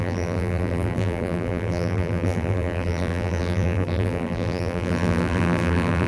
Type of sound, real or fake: fake